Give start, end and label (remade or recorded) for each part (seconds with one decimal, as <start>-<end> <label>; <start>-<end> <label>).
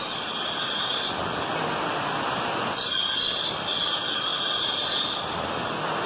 0.0-6.1 recorded